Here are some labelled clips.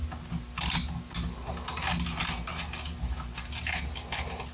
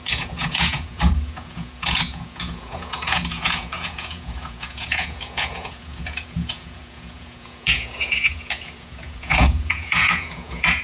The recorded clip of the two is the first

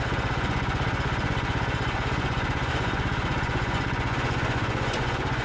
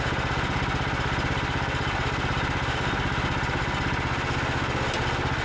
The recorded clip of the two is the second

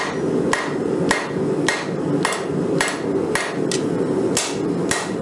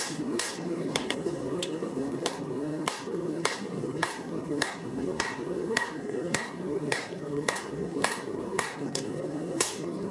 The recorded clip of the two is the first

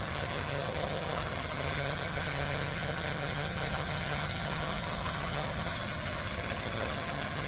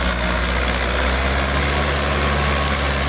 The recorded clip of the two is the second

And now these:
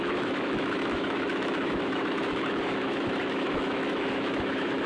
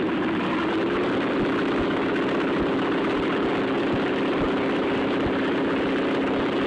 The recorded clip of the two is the second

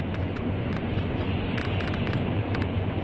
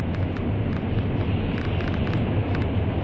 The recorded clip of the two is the second